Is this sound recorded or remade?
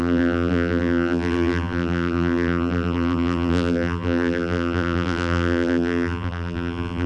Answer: remade